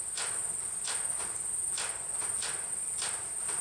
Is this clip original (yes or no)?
yes